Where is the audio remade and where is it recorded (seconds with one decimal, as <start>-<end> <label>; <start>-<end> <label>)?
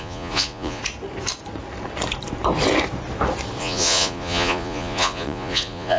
0.0-0.8 remade; 0.8-3.6 recorded; 3.6-6.0 remade